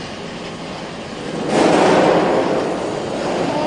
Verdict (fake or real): real